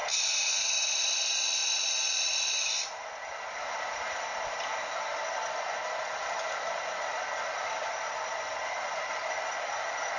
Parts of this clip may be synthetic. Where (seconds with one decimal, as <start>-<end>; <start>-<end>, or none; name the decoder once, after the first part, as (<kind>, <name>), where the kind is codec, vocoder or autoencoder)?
1.6-2.5 (vocoder, BigVGAN v2)

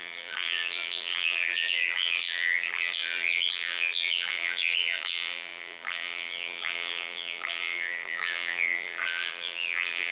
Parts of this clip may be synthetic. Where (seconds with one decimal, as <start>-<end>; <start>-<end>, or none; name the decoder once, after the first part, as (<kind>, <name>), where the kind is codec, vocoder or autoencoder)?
0.0-10.1 (vocoder, BigVGAN v2)

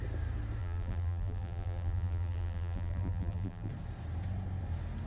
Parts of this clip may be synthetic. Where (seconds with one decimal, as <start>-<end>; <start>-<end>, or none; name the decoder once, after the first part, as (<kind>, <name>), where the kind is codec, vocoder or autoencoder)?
0.6-3.7 (vocoder, BigVGAN v2)

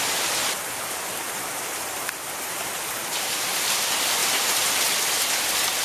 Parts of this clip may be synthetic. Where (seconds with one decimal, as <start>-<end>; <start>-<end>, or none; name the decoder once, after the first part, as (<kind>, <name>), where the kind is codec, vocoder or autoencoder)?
4.2-4.7 (vocoder, BigVGAN v2)

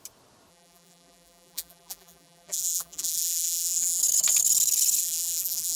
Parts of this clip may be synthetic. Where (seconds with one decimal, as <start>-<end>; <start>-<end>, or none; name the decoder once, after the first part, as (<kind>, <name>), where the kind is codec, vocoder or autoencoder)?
0.5-4.0 (vocoder, BigVGAN v2); 5.0-5.8

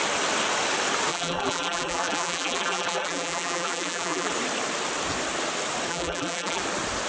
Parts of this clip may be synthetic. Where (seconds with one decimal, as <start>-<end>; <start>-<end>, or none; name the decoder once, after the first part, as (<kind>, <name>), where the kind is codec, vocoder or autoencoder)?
1.1-4.3 (vocoder, BigVGAN v2); 5.9-6.6

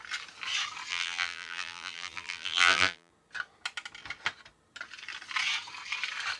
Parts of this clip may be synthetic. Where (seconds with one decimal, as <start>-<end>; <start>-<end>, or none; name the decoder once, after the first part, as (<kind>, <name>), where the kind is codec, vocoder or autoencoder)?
0.9-3.1 (vocoder, BigVGAN v2)

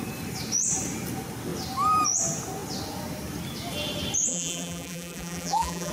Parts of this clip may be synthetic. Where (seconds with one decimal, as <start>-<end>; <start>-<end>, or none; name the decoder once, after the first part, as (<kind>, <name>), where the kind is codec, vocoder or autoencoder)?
4.3-5.9 (vocoder, BigVGAN v2)